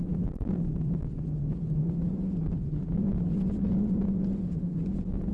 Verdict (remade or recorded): recorded